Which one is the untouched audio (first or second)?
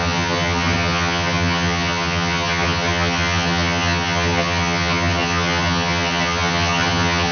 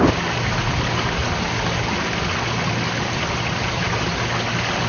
second